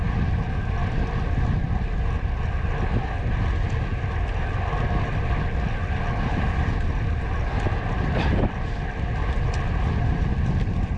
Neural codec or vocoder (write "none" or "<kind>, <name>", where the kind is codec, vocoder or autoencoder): none